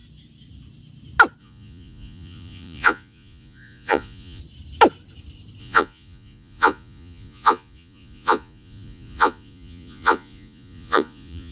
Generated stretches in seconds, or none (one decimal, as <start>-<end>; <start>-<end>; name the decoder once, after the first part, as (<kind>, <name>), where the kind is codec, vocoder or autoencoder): 1.4-4.4 (vocoder, Vocos); 5.6-11.5